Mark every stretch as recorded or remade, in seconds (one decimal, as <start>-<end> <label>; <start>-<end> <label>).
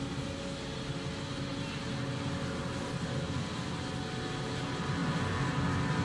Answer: 0.0-6.0 recorded